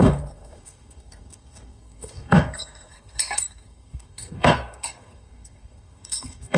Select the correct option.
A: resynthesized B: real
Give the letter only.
A